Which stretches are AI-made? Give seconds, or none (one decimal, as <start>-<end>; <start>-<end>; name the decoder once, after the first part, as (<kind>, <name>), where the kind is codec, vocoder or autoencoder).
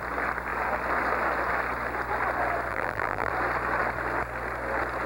2.7-3.3 (vocoder, BigVGAN v2)